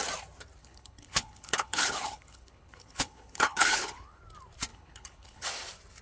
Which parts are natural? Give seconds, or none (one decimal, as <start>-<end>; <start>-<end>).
0.0-0.6; 4.2-4.7; 5.5-6.0